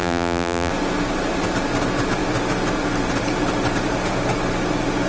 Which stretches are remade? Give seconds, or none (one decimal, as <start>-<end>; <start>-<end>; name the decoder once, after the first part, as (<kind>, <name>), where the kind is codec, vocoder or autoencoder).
0.0-0.7 (vocoder, BigVGAN v2)